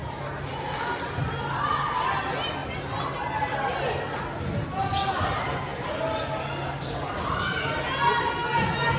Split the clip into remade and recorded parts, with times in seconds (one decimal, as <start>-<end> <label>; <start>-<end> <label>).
0.0-9.0 recorded